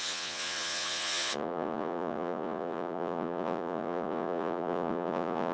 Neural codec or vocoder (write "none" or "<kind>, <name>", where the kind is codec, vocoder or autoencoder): vocoder, Vocos